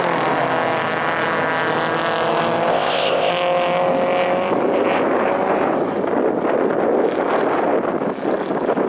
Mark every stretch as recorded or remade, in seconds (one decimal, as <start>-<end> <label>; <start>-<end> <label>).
0.0-2.7 recorded; 2.7-3.3 remade; 3.3-8.9 recorded